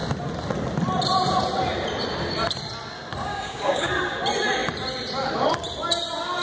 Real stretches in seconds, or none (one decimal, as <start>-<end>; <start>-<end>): 0.0-3.3; 3.9-6.4